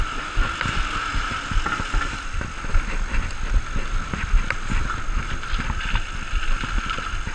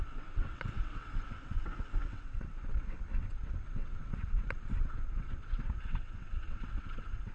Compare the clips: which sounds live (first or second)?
first